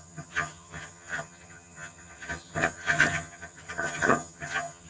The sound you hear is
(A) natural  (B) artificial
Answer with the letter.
B